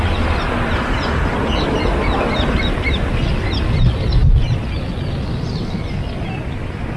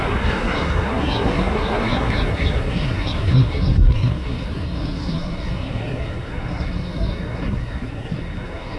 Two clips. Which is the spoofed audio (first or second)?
second